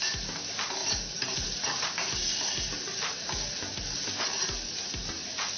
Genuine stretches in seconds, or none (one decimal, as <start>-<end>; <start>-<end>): 0.0-0.8; 4.2-5.6